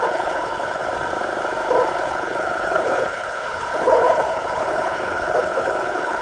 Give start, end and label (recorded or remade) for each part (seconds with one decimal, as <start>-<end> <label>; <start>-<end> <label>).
0.0-0.8 remade; 0.8-1.9 recorded; 1.9-6.2 remade